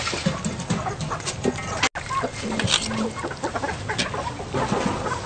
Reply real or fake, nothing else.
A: real